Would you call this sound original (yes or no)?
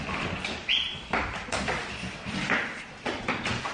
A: yes